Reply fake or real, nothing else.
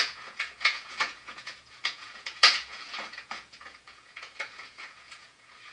fake